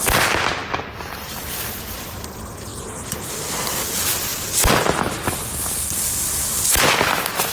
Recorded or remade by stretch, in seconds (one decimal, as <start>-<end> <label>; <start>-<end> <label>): 0.0-7.5 recorded